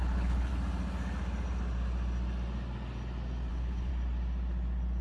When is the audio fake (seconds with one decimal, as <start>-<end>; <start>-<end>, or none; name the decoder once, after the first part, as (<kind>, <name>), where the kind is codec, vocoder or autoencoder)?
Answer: 0.0-0.5 (codec, HILCodec); 3.5-3.9